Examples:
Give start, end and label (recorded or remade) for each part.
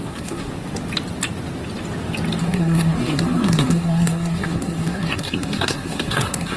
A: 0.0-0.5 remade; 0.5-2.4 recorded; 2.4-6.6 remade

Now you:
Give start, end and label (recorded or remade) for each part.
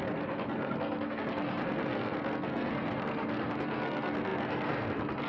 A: 0.0-5.3 remade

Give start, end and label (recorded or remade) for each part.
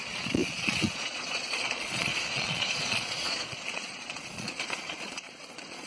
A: 0.0-5.9 remade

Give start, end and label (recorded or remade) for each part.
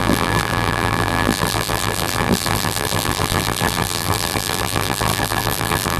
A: 0.0-6.0 remade